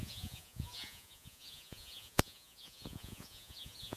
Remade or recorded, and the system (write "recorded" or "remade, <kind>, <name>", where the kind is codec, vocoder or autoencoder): remade, vocoder, Vocos